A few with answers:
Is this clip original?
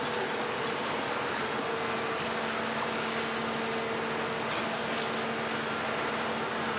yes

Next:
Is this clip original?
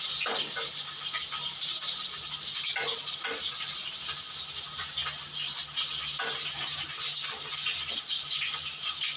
yes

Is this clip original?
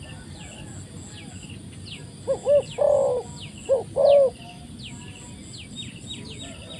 yes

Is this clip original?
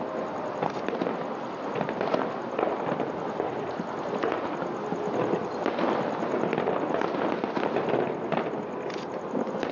yes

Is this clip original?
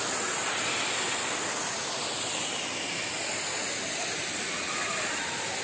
yes